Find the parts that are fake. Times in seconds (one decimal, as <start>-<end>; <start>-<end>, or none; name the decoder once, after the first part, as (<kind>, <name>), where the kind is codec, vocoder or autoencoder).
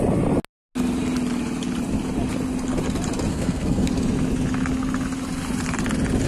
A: 3.3-3.9 (codec, SNAC)